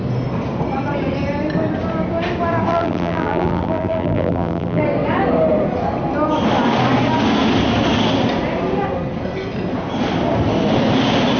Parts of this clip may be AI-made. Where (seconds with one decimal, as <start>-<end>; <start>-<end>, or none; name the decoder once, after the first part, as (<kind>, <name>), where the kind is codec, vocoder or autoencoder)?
2.7-4.8 (vocoder, BigVGAN v2)